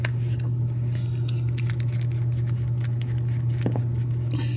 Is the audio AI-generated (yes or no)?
no